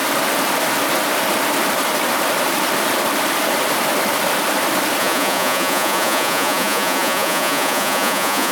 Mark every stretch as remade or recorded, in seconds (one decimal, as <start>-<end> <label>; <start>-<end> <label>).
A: 0.0-5.0 recorded; 5.0-8.5 remade